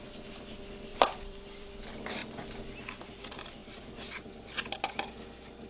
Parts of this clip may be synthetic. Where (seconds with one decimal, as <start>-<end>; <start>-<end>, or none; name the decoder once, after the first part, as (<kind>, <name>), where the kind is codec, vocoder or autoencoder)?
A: 0.9-1.7 (vocoder, BigVGAN v2); 3.6-4.2